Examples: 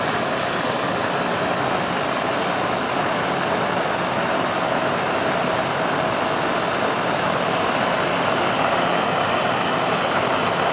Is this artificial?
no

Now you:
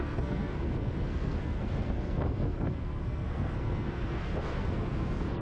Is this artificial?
yes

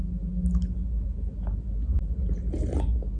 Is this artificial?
no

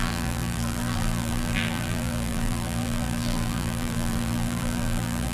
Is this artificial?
yes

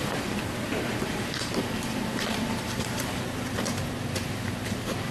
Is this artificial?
yes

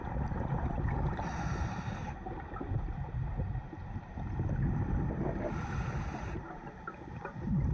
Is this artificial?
yes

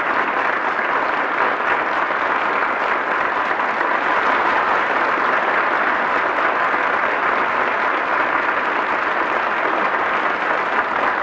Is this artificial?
no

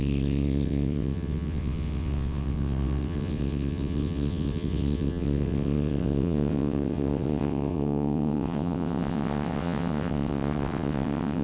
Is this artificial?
yes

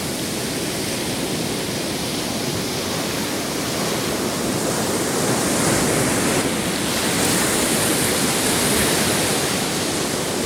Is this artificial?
no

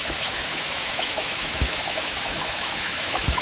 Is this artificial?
yes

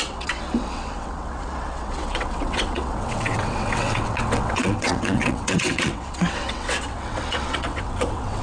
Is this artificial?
yes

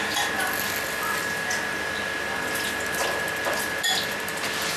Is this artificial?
no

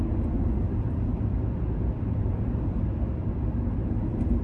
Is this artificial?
yes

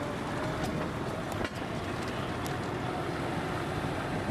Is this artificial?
no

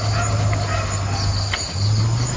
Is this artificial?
no